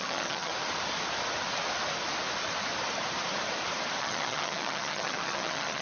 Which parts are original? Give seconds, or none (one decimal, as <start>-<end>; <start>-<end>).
0.5-4.0